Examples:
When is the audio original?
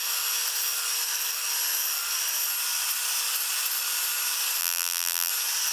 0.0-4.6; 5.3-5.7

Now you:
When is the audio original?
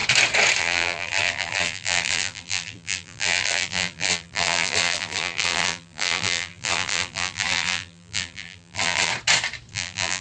0.0-0.6; 9.1-9.7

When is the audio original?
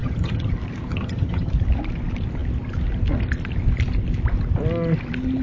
0.5-0.9; 1.5-5.4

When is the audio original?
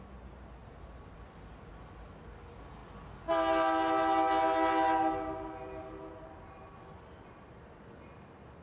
0.0-8.6